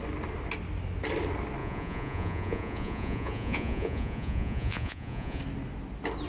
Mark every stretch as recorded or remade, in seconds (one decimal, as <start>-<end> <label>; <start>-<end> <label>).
0.0-1.6 recorded; 1.6-5.4 remade; 5.4-6.3 recorded